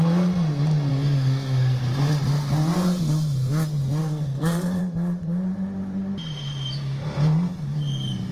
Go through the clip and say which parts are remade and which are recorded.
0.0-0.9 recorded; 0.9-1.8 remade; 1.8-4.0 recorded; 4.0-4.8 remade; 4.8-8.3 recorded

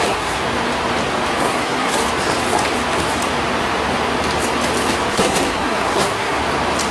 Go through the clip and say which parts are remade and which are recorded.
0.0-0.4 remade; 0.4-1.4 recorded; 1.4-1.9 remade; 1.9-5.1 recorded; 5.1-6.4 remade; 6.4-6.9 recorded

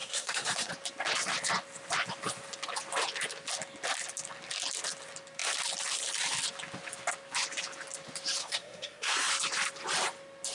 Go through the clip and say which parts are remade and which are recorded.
0.0-0.7 remade; 0.7-8.4 recorded; 8.4-9.3 remade; 9.3-10.5 recorded

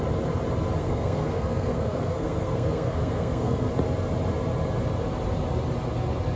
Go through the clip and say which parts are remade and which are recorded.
0.0-0.8 recorded; 0.8-3.7 remade; 3.7-6.4 recorded